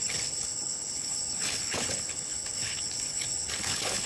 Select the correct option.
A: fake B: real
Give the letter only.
A